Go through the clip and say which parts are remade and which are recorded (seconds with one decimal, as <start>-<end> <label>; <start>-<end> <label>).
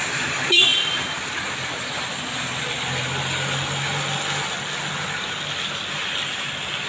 0.0-6.9 recorded